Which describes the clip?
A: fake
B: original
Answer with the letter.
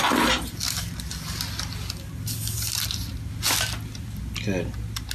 B